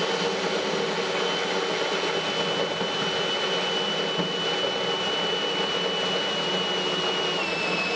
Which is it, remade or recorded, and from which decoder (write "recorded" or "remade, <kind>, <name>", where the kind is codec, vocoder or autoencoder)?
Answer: recorded